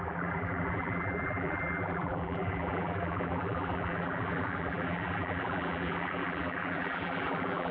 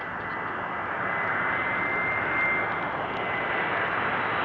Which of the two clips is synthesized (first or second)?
first